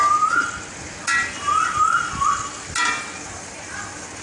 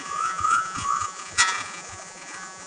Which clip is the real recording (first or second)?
first